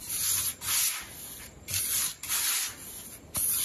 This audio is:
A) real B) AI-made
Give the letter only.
A